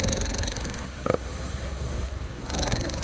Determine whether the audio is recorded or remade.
remade